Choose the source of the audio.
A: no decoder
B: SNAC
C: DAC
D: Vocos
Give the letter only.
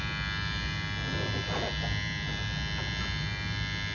A